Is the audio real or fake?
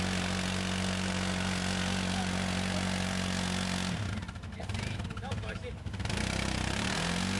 real